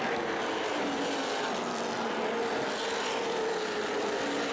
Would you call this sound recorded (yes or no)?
yes